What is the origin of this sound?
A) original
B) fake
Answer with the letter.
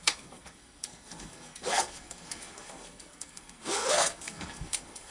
B